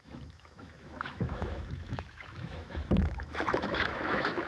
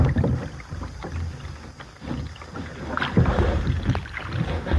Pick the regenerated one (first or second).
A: first